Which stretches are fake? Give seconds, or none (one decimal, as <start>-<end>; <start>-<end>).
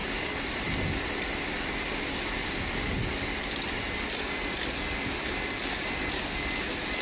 0.0-2.7